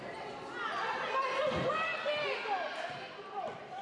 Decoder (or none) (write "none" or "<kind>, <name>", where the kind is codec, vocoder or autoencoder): none